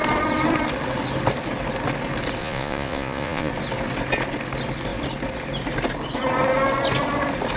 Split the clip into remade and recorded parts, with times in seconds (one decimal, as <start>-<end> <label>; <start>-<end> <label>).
0.0-2.4 recorded; 2.4-3.5 remade; 3.5-7.6 recorded